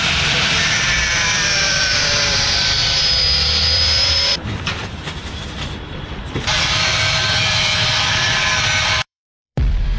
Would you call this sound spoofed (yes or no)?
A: yes